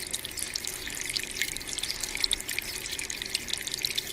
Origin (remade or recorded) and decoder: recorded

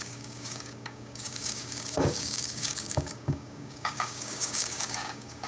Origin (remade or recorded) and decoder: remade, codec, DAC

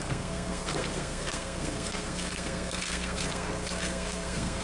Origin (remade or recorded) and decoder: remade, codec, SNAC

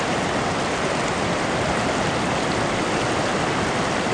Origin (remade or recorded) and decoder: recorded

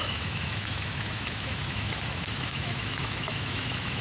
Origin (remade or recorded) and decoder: remade, autoencoder, DAC-VAE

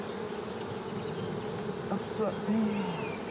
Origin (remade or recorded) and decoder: recorded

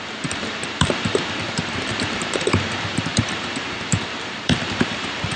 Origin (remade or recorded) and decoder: remade, vocoder, BigVGAN v2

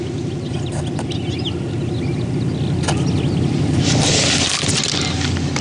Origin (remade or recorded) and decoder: recorded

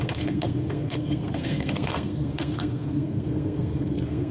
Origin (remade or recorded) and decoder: remade, codec, SNAC